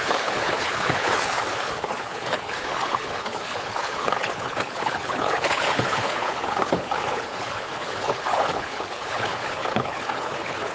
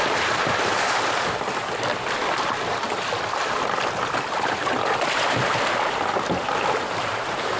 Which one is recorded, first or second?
second